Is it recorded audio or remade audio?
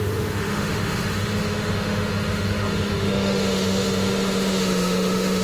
remade